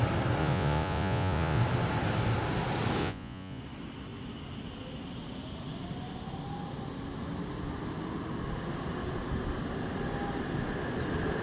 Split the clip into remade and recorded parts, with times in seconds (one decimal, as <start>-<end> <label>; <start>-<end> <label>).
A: 0.0-0.4 recorded; 0.4-1.6 remade; 1.6-3.0 recorded; 3.0-3.6 remade; 3.6-11.4 recorded